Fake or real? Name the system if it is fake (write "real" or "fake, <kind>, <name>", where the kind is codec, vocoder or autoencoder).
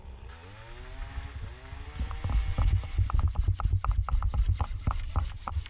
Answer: real